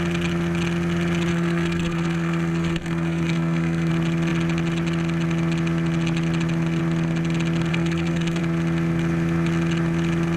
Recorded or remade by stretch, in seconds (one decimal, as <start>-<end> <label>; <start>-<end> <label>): 0.0-1.3 recorded; 1.3-3.9 remade; 3.9-7.7 recorded; 7.7-8.4 remade; 8.4-10.4 recorded